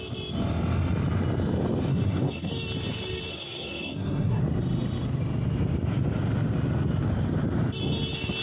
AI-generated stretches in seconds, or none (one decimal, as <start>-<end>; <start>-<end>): 1.9-2.5; 3.3-4.4